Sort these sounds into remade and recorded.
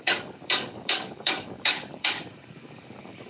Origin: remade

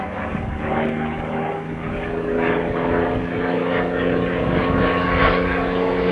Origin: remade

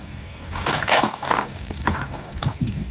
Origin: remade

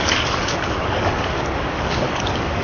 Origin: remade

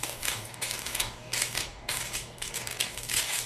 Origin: remade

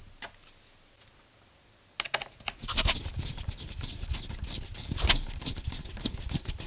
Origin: recorded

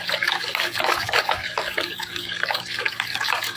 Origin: remade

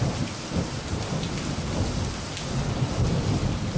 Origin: recorded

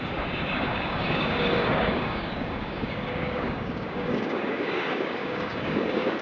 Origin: remade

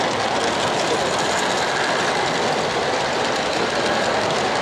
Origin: recorded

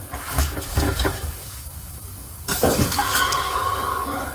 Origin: remade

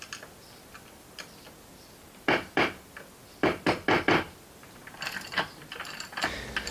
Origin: recorded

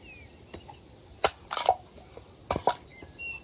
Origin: recorded